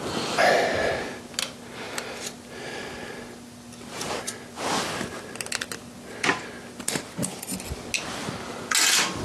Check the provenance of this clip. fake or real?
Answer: real